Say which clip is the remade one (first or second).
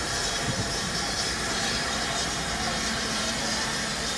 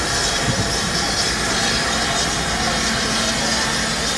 first